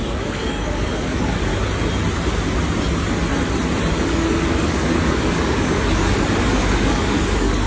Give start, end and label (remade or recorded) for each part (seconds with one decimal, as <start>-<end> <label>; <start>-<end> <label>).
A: 0.0-1.5 remade; 1.5-3.9 recorded; 3.9-7.7 remade